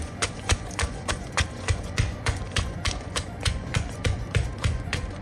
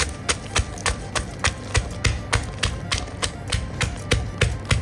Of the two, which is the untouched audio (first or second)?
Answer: second